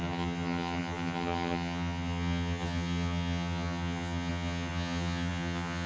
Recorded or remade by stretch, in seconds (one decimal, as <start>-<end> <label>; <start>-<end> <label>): 0.0-5.9 remade